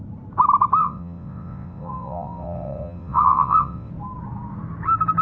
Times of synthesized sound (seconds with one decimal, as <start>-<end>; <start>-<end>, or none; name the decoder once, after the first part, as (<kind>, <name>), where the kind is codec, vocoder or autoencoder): 0.8-3.9 (vocoder, WaveNeXt)